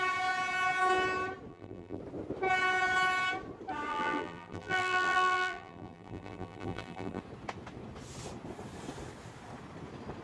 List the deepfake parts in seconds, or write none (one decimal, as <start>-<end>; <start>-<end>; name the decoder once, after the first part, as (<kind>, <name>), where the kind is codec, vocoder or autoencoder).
1.5-2.0 (vocoder, BigVGAN v2); 3.9-7.2